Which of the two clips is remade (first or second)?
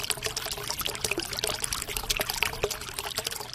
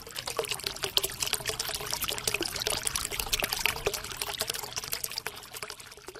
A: second